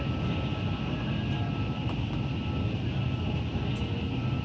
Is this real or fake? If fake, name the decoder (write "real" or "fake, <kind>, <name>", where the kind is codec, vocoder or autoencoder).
real